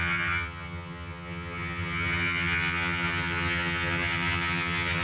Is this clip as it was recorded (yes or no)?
no